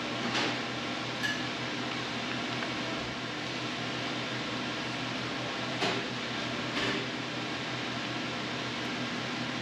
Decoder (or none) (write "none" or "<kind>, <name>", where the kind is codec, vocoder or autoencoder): none